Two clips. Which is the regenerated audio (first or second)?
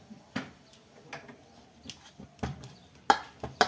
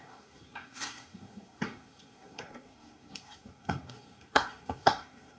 second